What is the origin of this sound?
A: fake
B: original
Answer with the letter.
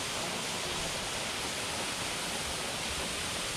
B